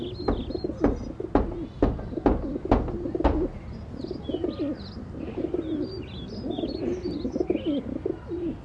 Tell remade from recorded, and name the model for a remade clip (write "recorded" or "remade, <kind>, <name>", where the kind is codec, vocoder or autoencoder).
recorded